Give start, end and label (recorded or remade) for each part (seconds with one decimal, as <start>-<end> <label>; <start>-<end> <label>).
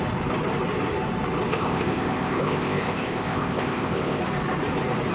0.0-1.5 recorded; 1.5-4.2 remade; 4.2-5.1 recorded